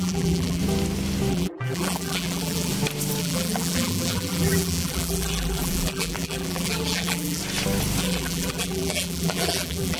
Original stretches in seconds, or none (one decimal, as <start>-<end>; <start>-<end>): 0.6-1.3; 2.7-3.2; 7.4-8.0